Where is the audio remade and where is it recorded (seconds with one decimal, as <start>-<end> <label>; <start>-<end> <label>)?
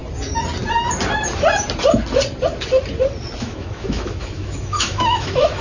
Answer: 0.0-3.4 recorded; 3.4-5.6 remade